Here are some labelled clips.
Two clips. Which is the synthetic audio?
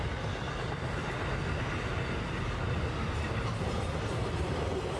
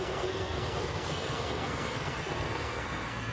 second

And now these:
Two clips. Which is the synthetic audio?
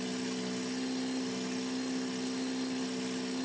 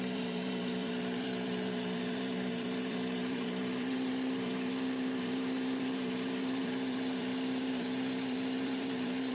second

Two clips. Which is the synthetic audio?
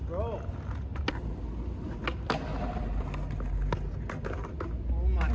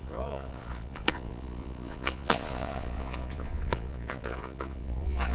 second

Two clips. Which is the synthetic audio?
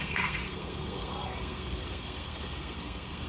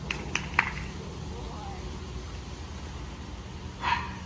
first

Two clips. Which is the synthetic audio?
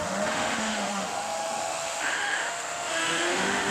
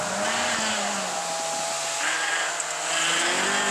first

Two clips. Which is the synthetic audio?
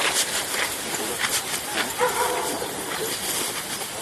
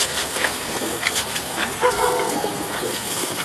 second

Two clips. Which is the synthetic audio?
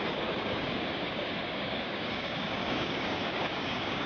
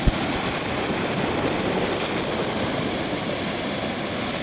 first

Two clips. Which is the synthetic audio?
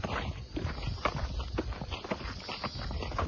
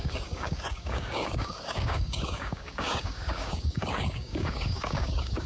second